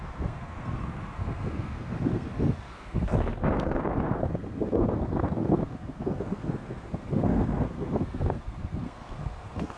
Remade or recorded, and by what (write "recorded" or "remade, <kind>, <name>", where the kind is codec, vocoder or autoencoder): remade, codec, SNAC